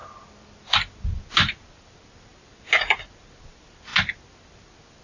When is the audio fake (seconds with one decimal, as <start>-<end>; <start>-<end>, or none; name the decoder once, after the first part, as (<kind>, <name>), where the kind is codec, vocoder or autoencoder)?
none